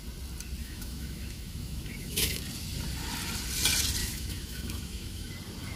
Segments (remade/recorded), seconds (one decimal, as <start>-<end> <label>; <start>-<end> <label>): 0.0-0.6 recorded; 0.6-2.4 remade; 2.4-4.0 recorded; 4.0-5.3 remade; 5.3-5.8 recorded